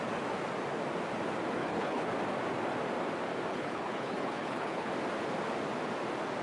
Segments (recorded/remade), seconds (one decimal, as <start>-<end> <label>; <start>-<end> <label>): 0.0-1.6 recorded; 1.6-2.1 remade; 2.1-3.5 recorded; 3.5-4.9 remade; 4.9-6.4 recorded